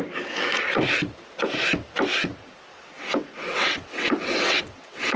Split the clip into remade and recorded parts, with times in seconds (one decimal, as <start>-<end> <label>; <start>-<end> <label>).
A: 0.0-2.7 recorded; 2.7-5.2 remade